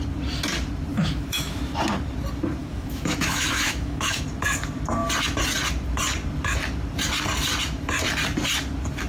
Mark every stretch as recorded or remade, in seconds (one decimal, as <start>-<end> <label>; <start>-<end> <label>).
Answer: 0.0-0.9 recorded; 0.9-1.6 remade; 1.6-2.6 recorded; 2.6-4.2 remade; 4.2-9.1 recorded